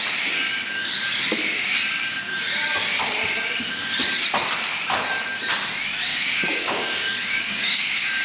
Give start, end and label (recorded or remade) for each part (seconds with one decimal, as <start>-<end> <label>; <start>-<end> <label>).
0.0-6.1 recorded; 6.1-8.2 remade